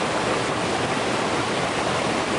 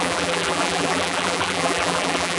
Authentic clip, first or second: first